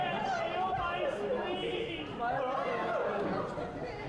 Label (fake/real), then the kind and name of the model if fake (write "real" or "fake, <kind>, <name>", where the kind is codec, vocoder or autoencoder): real